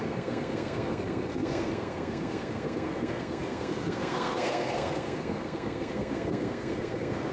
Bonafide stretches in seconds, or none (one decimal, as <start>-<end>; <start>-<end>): none